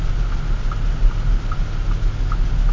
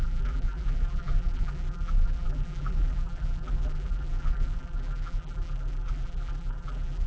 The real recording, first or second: first